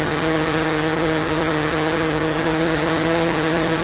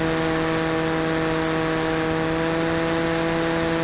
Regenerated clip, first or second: first